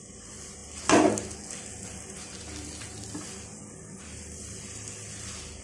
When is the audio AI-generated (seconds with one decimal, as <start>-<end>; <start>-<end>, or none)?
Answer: none